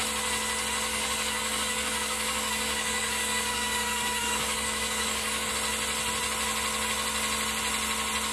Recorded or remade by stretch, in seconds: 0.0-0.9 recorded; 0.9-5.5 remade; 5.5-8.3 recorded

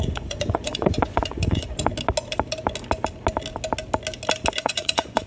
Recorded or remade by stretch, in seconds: 0.0-1.9 remade; 1.9-4.6 recorded; 4.6-5.3 remade

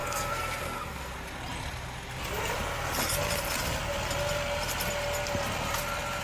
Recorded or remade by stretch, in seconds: 0.0-1.1 remade; 1.1-6.2 recorded

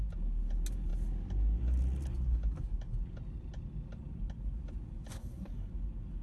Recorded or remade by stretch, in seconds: 0.0-5.1 recorded; 5.1-5.7 remade; 5.7-6.2 recorded

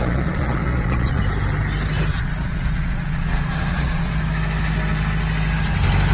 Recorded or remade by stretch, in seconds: 0.0-1.2 remade; 1.2-2.1 recorded; 2.1-4.1 remade; 4.1-6.1 recorded